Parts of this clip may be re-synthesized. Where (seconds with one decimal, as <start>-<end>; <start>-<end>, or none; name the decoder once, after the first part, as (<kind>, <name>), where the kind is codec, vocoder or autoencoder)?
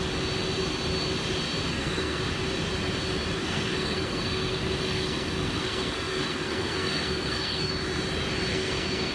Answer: 1.7-2.2 (codec, SNAC); 3.4-7.7; 8.5-9.1